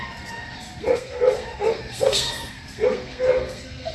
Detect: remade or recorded remade